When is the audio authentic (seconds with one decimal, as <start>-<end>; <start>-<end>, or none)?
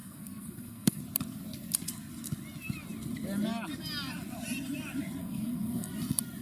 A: 1.0-5.2; 5.9-6.4